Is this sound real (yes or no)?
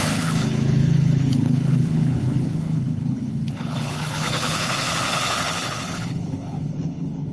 no